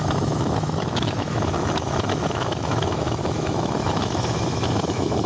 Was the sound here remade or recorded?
remade